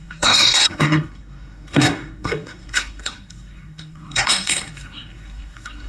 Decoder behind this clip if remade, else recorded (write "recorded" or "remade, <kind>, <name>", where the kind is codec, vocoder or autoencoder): remade, codec, SNAC